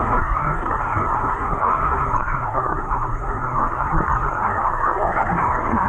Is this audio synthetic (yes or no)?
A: yes